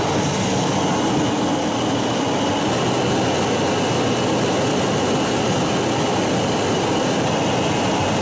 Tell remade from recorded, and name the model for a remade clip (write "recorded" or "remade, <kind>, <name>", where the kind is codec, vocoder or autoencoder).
recorded